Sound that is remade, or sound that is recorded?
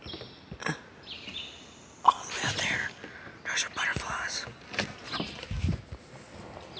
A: recorded